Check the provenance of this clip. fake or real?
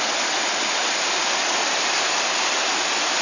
real